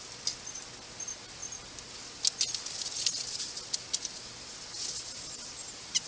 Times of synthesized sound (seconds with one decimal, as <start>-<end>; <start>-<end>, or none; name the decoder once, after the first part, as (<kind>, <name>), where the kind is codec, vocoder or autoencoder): none